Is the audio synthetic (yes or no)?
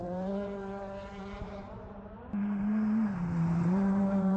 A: yes